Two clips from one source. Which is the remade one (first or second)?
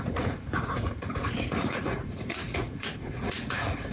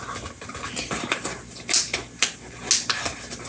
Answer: first